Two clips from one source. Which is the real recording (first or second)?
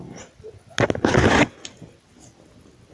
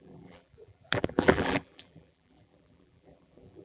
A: first